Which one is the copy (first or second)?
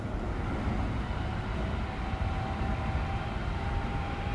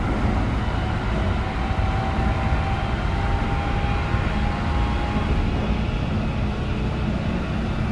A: first